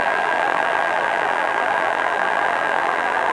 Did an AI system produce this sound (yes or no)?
yes